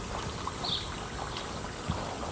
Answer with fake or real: real